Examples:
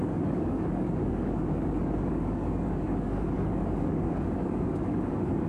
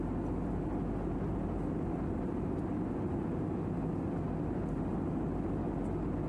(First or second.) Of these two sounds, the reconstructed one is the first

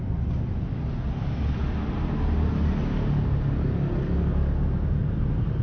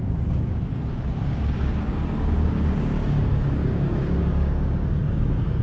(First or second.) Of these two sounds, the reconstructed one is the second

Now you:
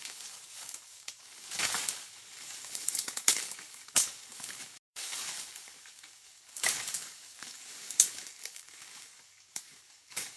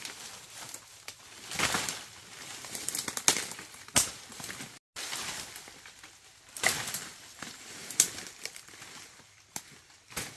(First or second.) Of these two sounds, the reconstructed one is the first